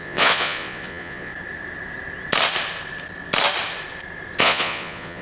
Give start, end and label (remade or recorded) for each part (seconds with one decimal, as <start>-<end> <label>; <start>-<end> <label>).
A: 0.0-1.3 remade; 1.3-4.4 recorded; 4.4-5.2 remade